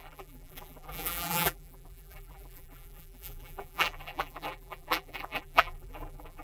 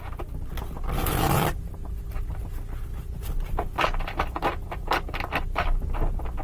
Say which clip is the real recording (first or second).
second